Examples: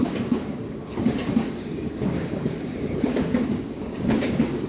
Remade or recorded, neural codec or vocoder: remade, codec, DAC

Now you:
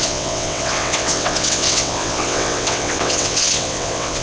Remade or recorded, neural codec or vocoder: remade, vocoder, WaveNeXt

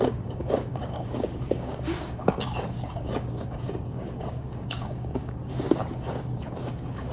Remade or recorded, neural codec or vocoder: remade, codec, DAC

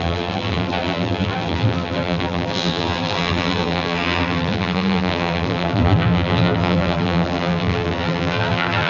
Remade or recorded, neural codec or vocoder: remade, vocoder, BigVGAN v2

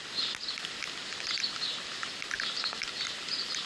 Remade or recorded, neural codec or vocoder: recorded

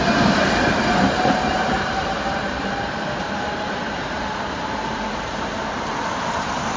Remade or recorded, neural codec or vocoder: remade, vocoder, BigVGAN v2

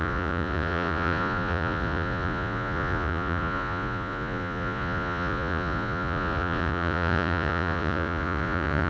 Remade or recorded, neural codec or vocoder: remade, vocoder, Vocos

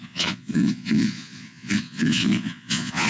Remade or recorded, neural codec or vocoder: remade, vocoder, Vocos